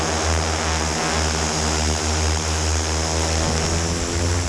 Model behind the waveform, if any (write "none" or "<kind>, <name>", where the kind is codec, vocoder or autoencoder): none